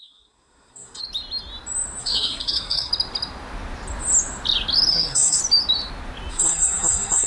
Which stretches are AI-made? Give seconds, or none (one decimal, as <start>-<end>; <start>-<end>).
0.0-1.0; 2.0-2.9; 4.9-5.4; 6.3-7.3